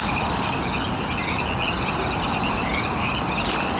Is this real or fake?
real